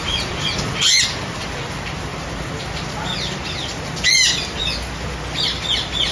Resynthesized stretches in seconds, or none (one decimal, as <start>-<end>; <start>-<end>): none